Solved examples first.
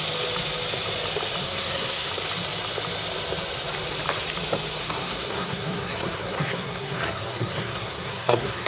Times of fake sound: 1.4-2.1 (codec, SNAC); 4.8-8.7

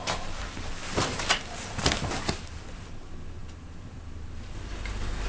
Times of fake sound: none

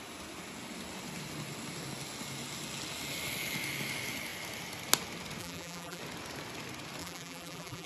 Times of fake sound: 5.4-6.0 (vocoder, BigVGAN v2); 7.0-7.9

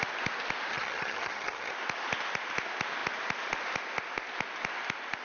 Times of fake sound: 0.7-1.7 (vocoder, HiFi-GAN)

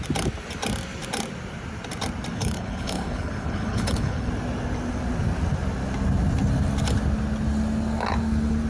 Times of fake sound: 2.3-4.3 (codec, HILCodec)